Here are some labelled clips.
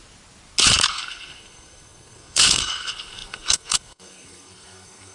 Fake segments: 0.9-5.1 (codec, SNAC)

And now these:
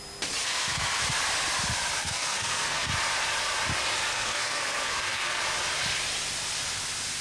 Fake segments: 0.4-1.0 (codec, SNAC); 2.0-2.9; 4.1-5.4

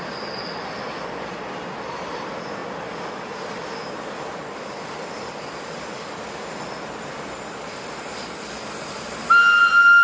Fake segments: none